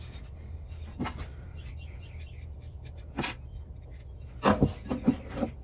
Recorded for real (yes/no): yes